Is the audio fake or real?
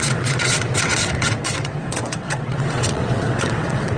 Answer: fake